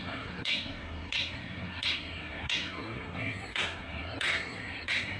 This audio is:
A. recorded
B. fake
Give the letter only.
B